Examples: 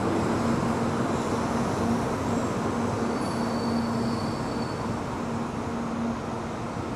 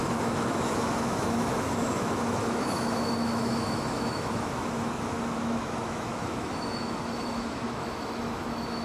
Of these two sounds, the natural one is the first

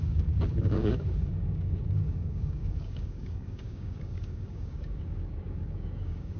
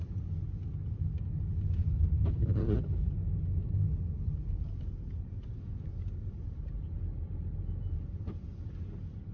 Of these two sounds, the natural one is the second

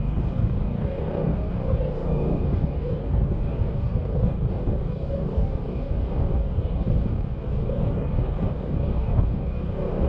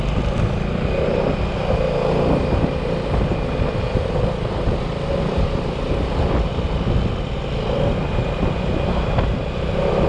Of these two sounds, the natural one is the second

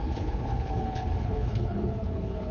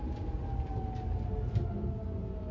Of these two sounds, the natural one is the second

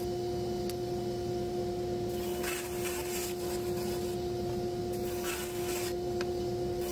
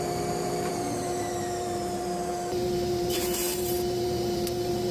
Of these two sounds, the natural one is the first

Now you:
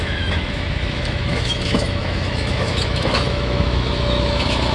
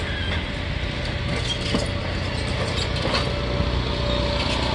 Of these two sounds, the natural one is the second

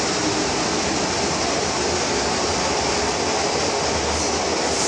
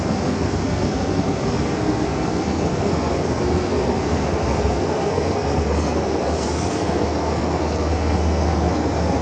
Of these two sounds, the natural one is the first